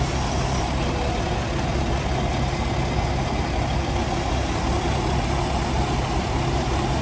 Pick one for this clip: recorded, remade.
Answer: recorded